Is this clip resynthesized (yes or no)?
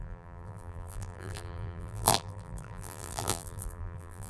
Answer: yes